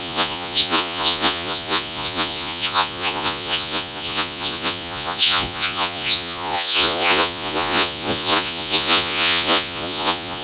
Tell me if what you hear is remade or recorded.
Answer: remade